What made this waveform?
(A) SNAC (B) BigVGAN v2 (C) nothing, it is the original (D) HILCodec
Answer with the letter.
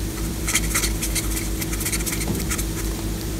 B